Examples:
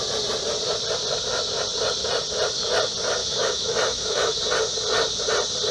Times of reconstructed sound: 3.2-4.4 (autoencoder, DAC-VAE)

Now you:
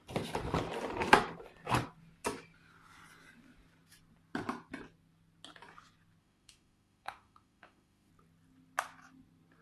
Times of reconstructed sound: 6.2-8.1 (autoencoder, DAC-VAE)

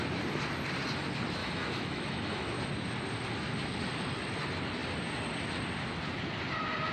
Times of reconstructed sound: 1.4-2.6 (autoencoder, DAC-VAE)

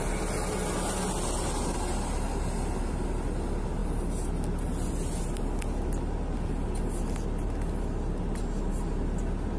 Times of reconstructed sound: none

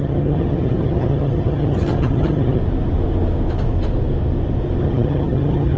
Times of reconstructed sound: 0.0-2.6 (vocoder, HiFi-GAN); 4.8-5.8